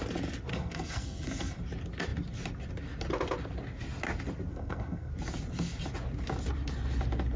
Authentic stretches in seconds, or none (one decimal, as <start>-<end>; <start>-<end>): 0.0-0.5; 1.6-4.5; 5.1-7.4